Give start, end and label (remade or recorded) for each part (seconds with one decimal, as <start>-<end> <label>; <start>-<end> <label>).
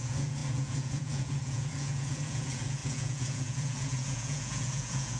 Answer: 0.0-5.2 remade